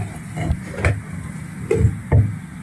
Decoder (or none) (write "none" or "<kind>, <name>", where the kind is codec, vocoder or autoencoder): none